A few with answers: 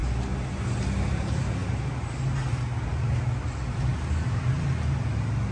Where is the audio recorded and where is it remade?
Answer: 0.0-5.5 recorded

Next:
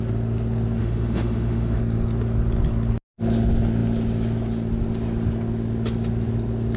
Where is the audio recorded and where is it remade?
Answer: 0.0-0.8 recorded; 0.8-1.8 remade; 1.8-6.8 recorded

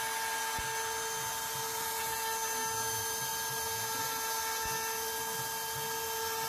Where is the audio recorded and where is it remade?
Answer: 0.0-6.5 recorded

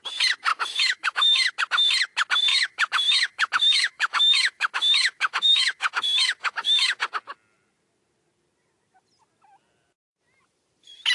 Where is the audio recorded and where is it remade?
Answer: 0.0-0.5 recorded; 0.5-1.5 remade; 1.5-2.5 recorded; 2.5-7.0 remade; 7.0-11.1 recorded

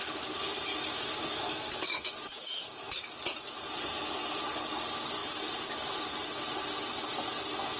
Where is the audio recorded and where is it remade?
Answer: 0.0-0.7 recorded; 0.7-3.2 remade; 3.2-7.8 recorded

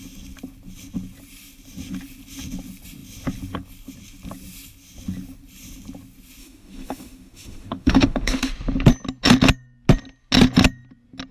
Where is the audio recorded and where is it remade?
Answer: 0.0-6.4 recorded; 6.4-8.5 remade; 8.5-11.3 recorded

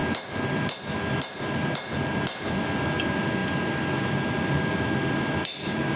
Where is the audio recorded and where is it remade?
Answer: 0.0-6.0 recorded

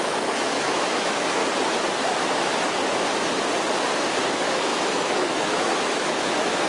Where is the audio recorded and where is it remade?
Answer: 0.0-1.4 remade; 1.4-4.3 recorded; 4.3-6.7 remade